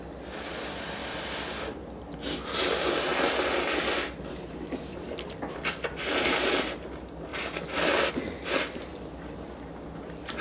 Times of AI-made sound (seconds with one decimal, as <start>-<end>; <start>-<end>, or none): 0.0-10.4